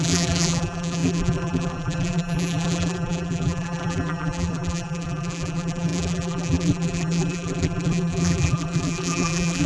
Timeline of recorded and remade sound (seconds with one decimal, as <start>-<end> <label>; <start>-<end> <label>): 0.0-9.7 remade